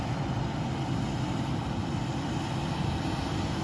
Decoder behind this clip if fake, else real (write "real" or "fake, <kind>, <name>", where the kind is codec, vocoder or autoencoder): fake, vocoder, BigVGAN v2